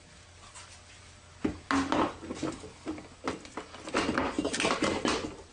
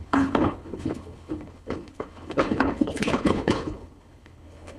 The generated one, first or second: second